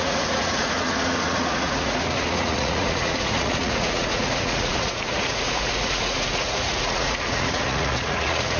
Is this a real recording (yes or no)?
no